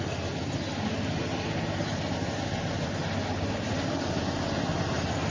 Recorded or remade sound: recorded